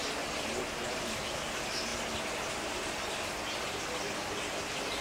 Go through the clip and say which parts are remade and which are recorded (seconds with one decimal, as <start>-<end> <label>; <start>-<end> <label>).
0.0-5.0 recorded